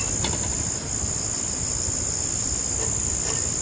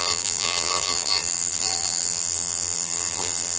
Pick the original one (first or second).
first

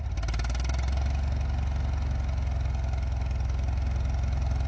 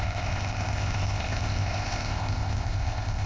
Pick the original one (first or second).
first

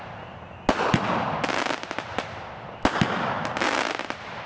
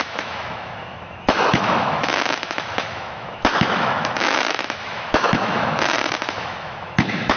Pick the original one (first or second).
first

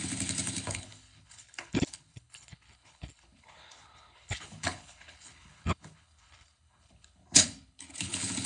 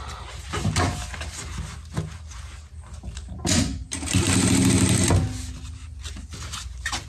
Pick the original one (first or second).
second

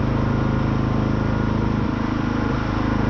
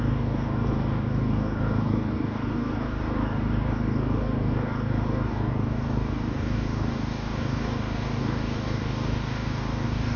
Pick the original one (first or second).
first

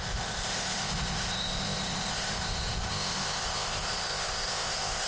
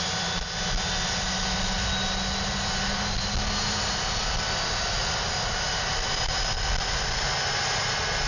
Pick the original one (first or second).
second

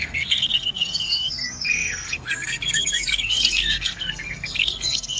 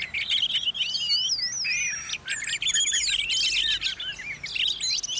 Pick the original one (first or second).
second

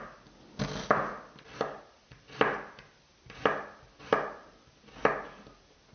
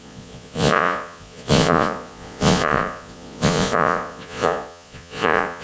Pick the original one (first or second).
first